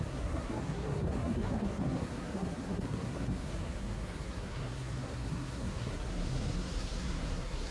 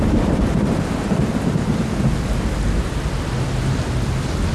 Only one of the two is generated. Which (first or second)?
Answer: first